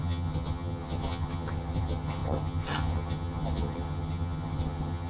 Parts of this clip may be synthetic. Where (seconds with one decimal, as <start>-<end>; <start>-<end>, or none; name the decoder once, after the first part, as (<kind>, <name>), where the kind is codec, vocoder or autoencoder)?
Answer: 0.0-5.1 (vocoder, HiFi-GAN)

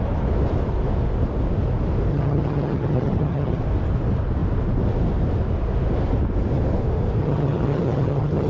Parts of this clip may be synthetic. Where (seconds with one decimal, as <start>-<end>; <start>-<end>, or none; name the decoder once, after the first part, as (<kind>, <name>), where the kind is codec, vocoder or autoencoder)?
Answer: 2.1-3.6 (vocoder, HiFi-GAN); 7.2-8.5

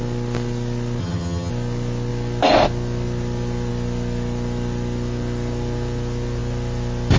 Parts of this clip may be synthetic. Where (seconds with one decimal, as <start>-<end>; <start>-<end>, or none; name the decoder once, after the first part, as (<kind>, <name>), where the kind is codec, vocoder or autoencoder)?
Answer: 1.0-1.5 (vocoder, HiFi-GAN)